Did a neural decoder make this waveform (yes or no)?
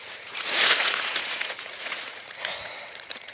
yes